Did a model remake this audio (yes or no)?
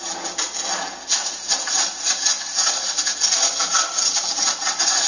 no